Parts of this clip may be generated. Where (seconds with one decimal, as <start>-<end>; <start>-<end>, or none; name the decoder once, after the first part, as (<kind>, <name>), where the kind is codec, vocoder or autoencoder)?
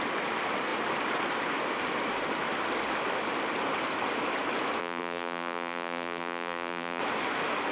4.8-7.0 (vocoder, BigVGAN v2)